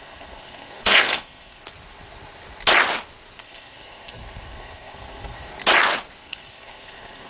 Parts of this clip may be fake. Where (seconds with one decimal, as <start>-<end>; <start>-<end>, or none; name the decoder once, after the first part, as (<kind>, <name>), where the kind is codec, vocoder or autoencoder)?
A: 0.0-1.6 (codec, SNAC); 3.4-5.5; 6.2-7.3